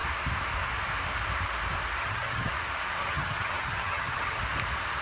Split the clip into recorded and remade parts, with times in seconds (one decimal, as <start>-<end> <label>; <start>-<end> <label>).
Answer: 0.0-2.0 recorded; 2.0-2.5 remade; 2.5-3.0 recorded; 3.0-4.4 remade; 4.4-5.0 recorded